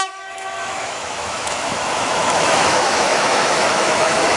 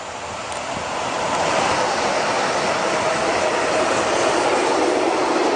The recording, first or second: second